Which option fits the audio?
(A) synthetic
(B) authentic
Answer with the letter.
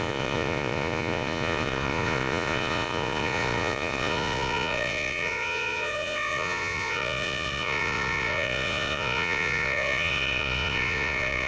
A